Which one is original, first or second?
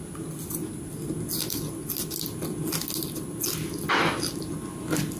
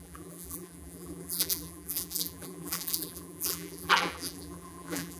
first